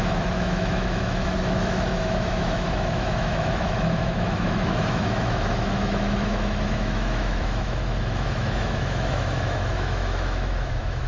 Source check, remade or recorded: remade